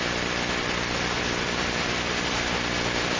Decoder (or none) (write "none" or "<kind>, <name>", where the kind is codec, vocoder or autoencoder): vocoder, BigVGAN v2